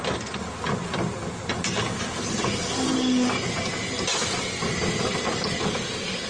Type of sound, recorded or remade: recorded